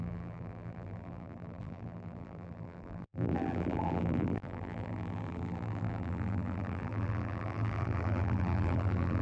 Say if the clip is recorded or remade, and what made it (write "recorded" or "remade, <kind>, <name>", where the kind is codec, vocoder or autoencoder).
remade, vocoder, BigVGAN v2